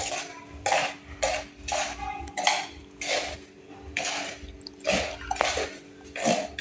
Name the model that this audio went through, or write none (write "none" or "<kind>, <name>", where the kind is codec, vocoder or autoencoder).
none